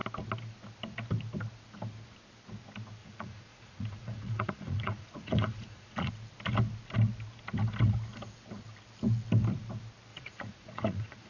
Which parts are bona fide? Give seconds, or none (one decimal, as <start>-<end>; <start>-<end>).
0.0-3.0; 6.1-10.1